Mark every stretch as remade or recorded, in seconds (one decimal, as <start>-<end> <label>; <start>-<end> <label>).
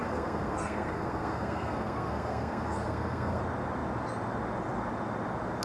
0.0-3.4 remade; 3.4-5.6 recorded